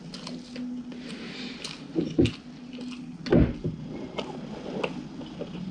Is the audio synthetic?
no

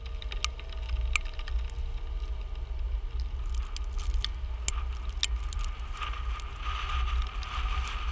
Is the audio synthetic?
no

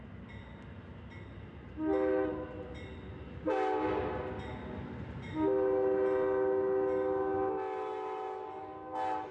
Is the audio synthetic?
no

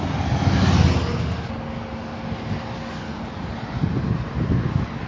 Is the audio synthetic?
no